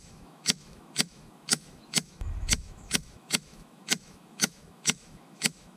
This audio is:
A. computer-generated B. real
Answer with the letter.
A